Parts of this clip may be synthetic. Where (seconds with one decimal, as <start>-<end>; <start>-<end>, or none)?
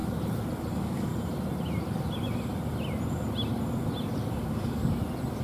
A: 0.7-1.1; 4.3-4.8